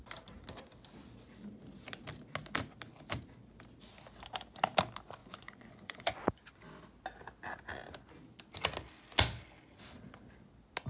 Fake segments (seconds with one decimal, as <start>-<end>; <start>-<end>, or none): 5.2-6.5